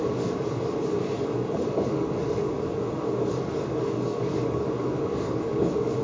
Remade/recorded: remade